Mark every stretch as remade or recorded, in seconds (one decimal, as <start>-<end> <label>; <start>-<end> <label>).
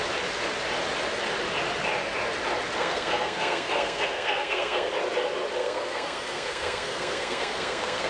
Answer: 0.0-2.8 recorded; 2.8-4.9 remade; 4.9-5.6 recorded; 5.6-8.1 remade